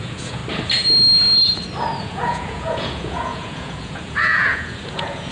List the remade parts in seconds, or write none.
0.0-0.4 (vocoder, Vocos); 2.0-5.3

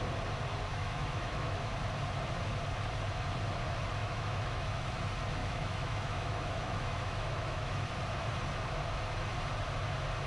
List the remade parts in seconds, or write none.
0.7-1.7 (autoencoder, DAC-VAE); 4.0-4.8; 5.4-7.9